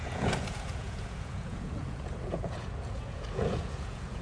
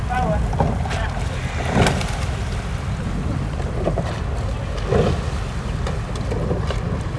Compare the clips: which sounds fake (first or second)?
first